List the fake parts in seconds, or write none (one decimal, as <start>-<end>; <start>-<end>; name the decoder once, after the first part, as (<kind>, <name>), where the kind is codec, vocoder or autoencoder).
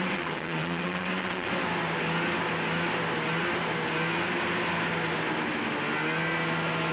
0.0-1.5 (vocoder, WaveNeXt)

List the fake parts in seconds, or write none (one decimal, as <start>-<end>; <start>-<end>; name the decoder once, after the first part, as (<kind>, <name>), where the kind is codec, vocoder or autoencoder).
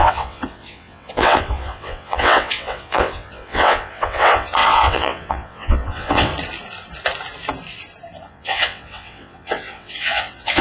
0.0-6.3 (vocoder, WaveNeXt); 8.3-10.6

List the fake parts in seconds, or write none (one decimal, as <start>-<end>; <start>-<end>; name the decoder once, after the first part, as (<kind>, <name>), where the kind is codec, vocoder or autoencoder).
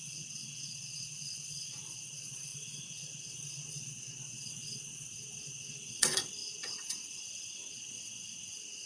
0.0-8.9 (vocoder, WaveNeXt)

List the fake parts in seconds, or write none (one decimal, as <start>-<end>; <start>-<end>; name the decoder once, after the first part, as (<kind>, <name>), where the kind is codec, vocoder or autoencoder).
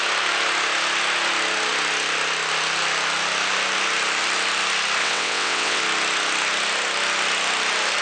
5.0-5.8 (vocoder, WaveNeXt)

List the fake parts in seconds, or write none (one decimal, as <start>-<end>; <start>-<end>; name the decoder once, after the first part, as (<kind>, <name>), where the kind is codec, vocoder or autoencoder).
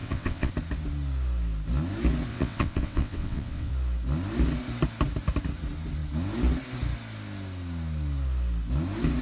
0.0-0.5 (vocoder, WaveNeXt); 2.3-3.7